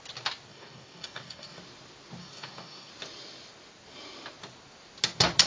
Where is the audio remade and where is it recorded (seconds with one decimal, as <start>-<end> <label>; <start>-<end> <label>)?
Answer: 0.0-0.5 recorded; 0.5-1.6 remade; 1.6-2.2 recorded; 2.2-2.9 remade; 2.9-5.5 recorded